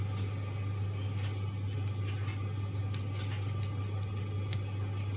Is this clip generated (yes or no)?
no